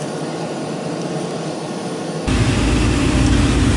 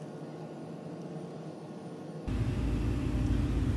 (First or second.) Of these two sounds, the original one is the second